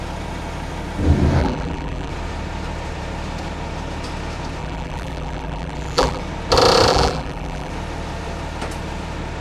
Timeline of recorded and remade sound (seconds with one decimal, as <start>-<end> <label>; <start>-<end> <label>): 0.0-1.4 recorded; 1.4-2.1 remade; 2.1-4.6 recorded; 4.6-6.2 remade; 6.2-6.9 recorded; 6.9-7.7 remade; 7.7-9.4 recorded